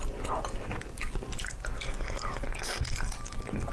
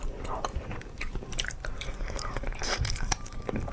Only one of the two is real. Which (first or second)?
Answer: first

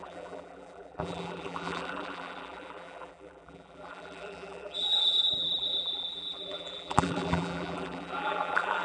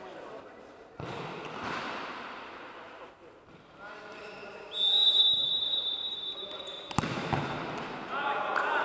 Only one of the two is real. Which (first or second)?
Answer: second